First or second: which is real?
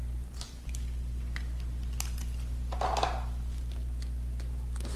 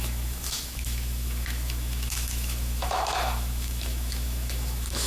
first